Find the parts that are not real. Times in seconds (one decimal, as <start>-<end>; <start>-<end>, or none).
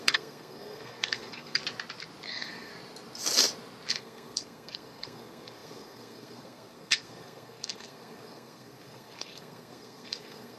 0.0-1.6; 2.3-2.7; 3.9-10.6